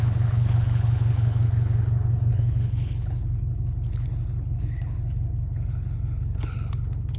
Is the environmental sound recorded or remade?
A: remade